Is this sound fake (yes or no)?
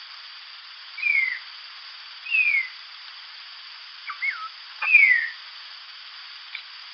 no